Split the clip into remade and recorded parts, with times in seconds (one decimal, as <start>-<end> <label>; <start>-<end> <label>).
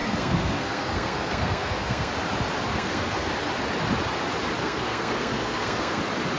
0.0-2.1 remade; 2.1-2.7 recorded; 2.7-3.3 remade; 3.3-4.6 recorded; 4.6-6.0 remade; 6.0-6.4 recorded